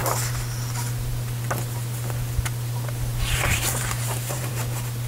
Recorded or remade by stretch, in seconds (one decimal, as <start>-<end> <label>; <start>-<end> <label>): 0.0-3.1 recorded; 3.1-4.5 remade; 4.5-5.1 recorded